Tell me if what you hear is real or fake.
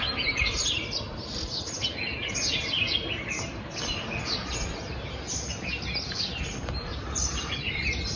real